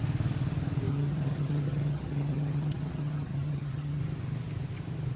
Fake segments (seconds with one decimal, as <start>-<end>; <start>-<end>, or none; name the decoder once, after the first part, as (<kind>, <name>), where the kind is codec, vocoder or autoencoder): 0.9-4.0 (vocoder, HiFi-GAN)